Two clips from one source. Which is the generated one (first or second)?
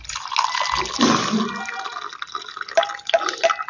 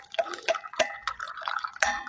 second